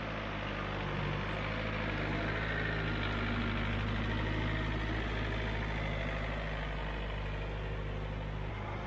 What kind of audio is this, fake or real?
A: real